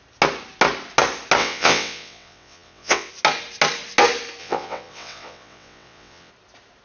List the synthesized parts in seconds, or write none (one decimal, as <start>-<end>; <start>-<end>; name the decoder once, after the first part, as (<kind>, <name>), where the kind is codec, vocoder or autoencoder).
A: 1.4-3.1 (vocoder, WaveNeXt); 4.4-6.3

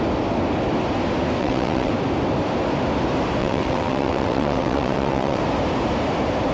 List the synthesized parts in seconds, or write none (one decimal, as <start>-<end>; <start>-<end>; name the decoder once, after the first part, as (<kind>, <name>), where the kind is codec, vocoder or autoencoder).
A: 1.4-1.9 (vocoder, WaveNeXt); 3.4-5.4

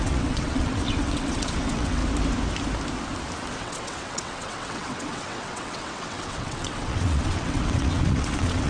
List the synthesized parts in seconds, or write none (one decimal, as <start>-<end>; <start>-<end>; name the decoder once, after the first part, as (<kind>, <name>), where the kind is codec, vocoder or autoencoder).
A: 0.0-2.0 (vocoder, WaveNeXt); 3.6-8.7